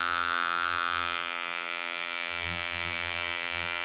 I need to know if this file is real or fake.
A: fake